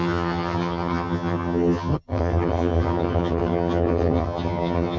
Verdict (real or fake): fake